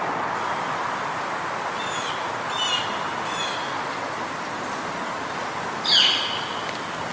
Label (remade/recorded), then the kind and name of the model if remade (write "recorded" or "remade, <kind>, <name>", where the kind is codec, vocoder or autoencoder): recorded